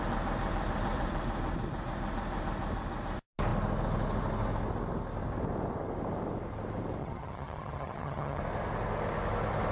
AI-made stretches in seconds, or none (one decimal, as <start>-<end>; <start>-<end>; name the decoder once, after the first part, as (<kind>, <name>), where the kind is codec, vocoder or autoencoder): 7.0-8.4 (vocoder, HiFi-GAN)